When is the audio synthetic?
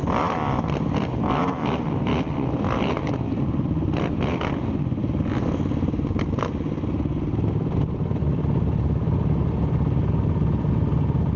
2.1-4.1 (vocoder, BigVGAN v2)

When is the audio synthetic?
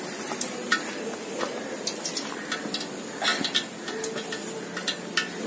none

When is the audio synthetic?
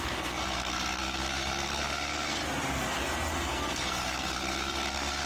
0.0-2.4 (codec, SNAC); 3.3-5.3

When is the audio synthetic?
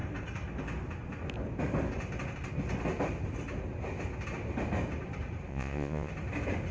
5.5-6.1 (vocoder, Vocos)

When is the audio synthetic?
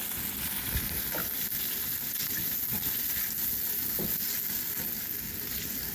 none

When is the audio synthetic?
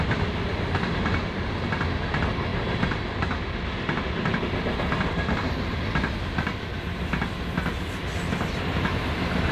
2.5-3.2 (vocoder, BigVGAN v2)